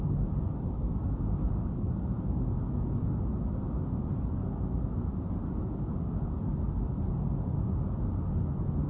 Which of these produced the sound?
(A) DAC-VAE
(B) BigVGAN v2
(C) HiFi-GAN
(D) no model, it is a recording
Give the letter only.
D